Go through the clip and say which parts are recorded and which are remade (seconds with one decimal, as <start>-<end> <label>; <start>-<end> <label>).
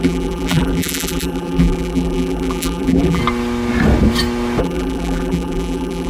0.0-3.2 remade; 3.2-4.6 recorded; 4.6-6.1 remade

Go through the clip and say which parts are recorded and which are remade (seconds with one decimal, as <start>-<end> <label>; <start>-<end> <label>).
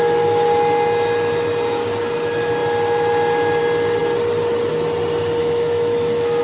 0.0-5.4 recorded; 5.4-6.4 remade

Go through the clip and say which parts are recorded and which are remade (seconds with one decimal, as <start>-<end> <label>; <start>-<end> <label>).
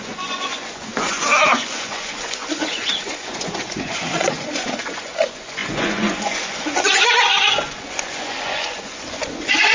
0.0-9.7 remade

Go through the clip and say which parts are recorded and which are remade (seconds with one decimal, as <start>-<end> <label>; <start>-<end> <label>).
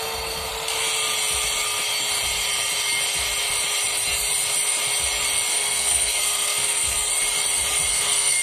0.0-0.5 remade; 0.5-5.5 recorded; 5.5-7.1 remade; 7.1-7.9 recorded; 7.9-8.4 remade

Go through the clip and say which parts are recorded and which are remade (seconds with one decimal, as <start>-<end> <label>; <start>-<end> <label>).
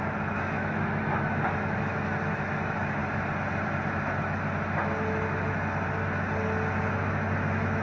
0.0-3.0 remade; 3.0-6.9 recorded; 6.9-7.8 remade